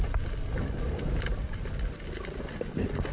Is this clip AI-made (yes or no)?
no